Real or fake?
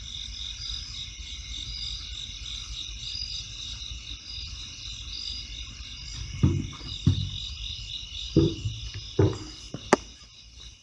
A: real